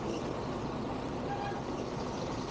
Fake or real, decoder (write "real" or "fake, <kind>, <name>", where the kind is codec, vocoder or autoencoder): real